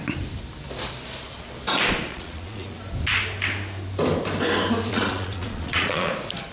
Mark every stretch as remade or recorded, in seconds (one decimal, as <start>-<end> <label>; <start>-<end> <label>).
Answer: 0.0-2.1 recorded; 2.1-2.8 remade; 2.8-4.9 recorded; 4.9-6.1 remade; 6.1-6.5 recorded